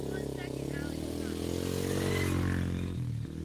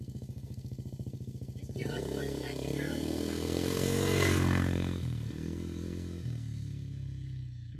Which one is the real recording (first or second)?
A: first